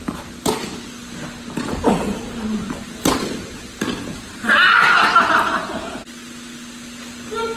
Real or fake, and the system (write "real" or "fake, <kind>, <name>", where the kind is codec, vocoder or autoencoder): real